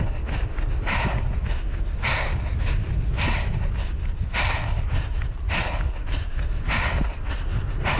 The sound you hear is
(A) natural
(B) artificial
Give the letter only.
A